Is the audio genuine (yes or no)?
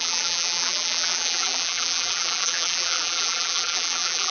no